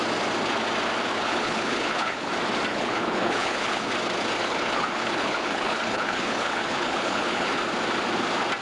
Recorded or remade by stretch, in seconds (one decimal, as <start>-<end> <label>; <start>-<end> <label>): 0.0-1.1 recorded; 1.1-2.3 remade; 2.3-2.7 recorded; 2.7-3.9 remade; 3.9-4.4 recorded; 4.4-7.6 remade; 7.6-8.6 recorded

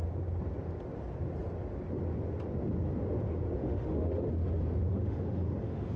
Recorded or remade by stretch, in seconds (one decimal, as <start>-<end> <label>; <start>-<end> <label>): 0.0-3.6 recorded; 3.6-4.3 remade; 4.3-4.9 recorded; 4.9-6.0 remade

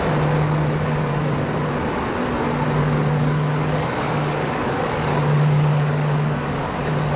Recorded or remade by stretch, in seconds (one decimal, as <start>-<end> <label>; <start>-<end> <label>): 0.0-2.8 recorded; 2.8-6.8 remade; 6.8-7.2 recorded

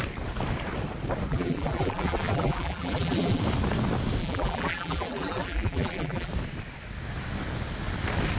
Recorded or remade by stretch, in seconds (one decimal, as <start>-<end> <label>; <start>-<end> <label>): 0.0-1.3 recorded; 1.3-3.4 remade; 3.4-4.2 recorded; 4.2-6.3 remade; 6.3-8.4 recorded

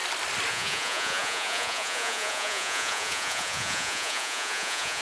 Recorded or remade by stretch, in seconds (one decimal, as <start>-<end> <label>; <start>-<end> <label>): 0.0-0.5 recorded; 0.5-5.0 remade

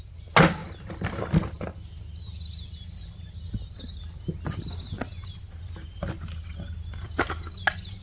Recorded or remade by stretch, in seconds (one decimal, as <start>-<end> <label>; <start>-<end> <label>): 0.0-8.0 recorded